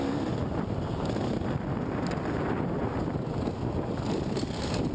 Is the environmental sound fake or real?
real